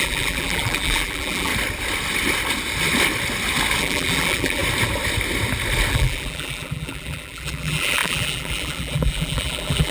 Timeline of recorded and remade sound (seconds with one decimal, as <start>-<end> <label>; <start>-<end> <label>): 0.0-1.5 remade; 1.5-3.8 recorded; 3.8-4.6 remade; 4.6-5.9 recorded; 5.9-9.9 remade